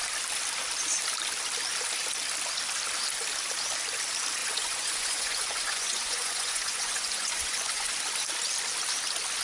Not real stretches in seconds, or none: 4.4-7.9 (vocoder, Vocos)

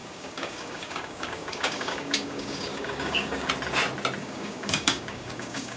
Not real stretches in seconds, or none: 0.0-3.5 (codec, DAC); 4.2-5.8

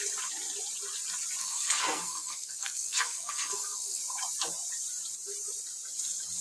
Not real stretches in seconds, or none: 1.4-4.0 (codec, SNAC)

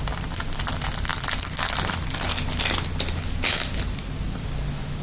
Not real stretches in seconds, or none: none

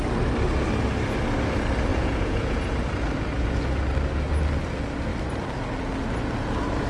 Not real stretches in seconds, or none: 1.9-2.6 (vocoder, Vocos)